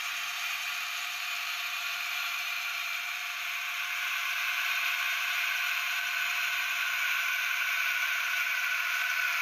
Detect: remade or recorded remade